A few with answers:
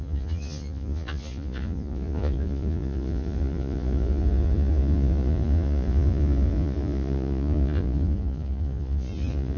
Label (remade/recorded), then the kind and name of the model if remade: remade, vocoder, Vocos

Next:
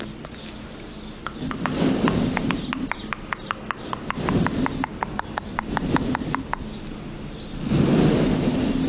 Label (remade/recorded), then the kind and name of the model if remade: recorded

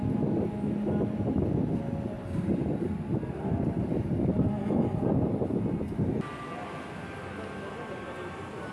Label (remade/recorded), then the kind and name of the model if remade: recorded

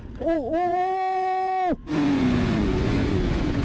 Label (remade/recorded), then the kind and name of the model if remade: remade, vocoder, Vocos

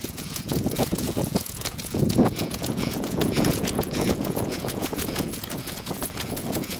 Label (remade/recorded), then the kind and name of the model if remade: remade, vocoder, Vocos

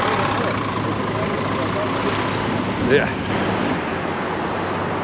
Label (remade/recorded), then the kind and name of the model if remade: recorded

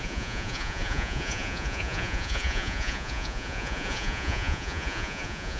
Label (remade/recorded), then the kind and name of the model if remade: remade, vocoder, Vocos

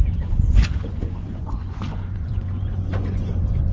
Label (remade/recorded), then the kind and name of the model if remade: remade, vocoder, Vocos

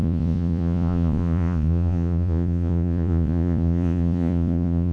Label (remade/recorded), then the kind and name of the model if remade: remade, vocoder, Vocos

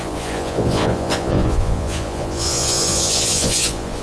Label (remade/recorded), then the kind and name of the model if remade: remade, vocoder, Vocos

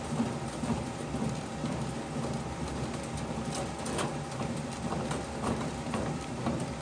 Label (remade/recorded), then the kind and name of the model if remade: recorded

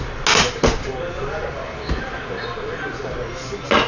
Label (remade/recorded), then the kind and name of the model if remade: recorded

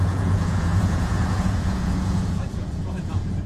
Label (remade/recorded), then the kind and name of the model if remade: remade, vocoder, Vocos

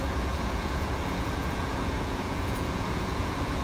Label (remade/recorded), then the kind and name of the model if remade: remade, vocoder, Vocos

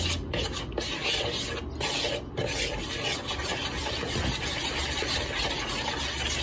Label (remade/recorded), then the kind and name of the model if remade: recorded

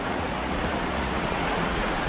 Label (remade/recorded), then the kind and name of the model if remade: remade, vocoder, Vocos